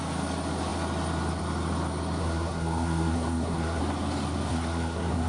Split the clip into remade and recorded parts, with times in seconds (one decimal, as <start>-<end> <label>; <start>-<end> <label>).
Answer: 0.0-2.2 recorded; 2.2-3.8 remade; 3.8-4.5 recorded; 4.5-5.3 remade